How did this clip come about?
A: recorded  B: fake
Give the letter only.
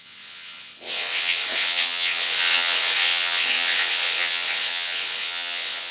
B